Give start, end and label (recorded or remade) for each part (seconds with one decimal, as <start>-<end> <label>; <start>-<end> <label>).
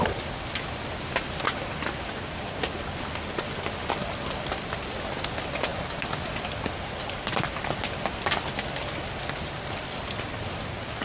0.0-11.0 recorded